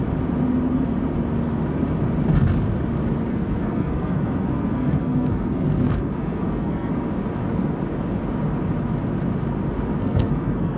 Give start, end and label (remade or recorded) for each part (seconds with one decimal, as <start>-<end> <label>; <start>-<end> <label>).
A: 0.0-3.3 recorded; 3.3-6.9 remade; 6.9-10.0 recorded; 10.0-10.8 remade